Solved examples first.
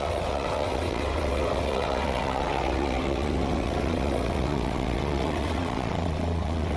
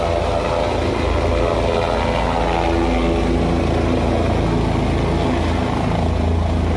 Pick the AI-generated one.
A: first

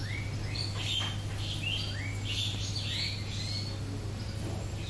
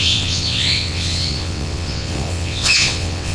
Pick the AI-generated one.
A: second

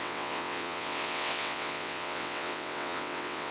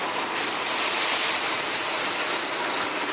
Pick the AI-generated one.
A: first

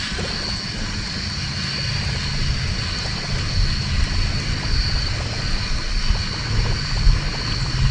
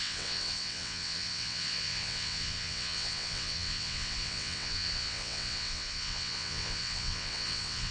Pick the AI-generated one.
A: second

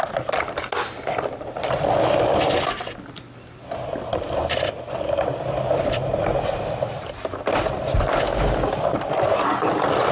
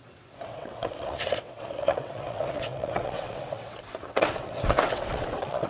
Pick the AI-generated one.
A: second